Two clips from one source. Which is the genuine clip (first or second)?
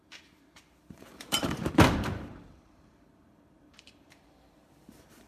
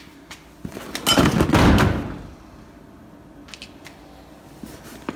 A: second